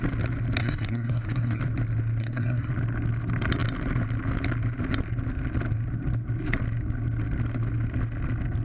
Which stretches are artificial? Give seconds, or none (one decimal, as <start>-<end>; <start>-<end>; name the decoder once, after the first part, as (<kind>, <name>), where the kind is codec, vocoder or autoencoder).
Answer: 0.6-1.6 (codec, SNAC); 2.2-2.7